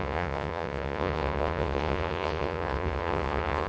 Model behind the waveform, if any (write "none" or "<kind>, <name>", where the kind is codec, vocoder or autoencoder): vocoder, Vocos